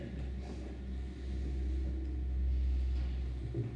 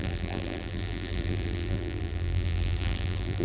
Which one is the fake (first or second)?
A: second